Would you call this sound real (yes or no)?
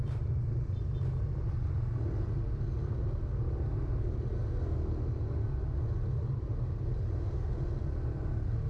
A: yes